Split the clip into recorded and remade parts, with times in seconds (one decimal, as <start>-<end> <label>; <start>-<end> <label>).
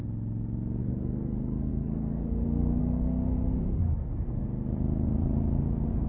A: 0.0-0.8 recorded; 0.8-4.1 remade; 4.1-6.1 recorded